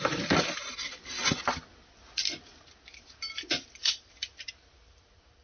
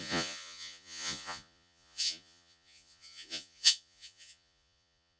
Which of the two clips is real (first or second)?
first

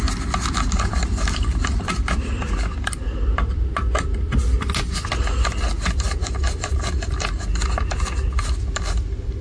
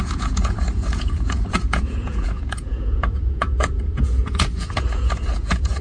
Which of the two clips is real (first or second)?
first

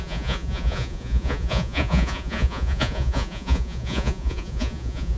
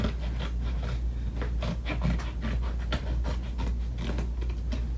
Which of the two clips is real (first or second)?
second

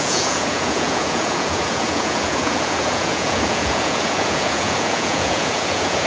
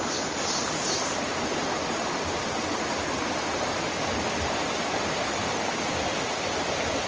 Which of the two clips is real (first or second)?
second